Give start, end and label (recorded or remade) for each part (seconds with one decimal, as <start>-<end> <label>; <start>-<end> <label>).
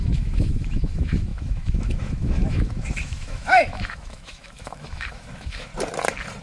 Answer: 0.0-5.7 remade; 5.7-6.4 recorded